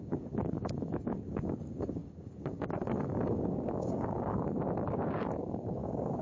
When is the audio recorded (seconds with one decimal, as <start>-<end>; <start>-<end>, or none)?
none